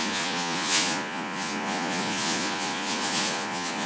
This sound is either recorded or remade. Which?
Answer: remade